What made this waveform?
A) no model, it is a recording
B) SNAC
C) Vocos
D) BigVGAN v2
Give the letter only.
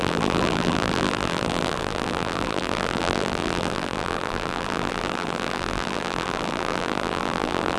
D